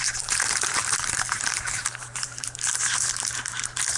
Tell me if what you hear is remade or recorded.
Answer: remade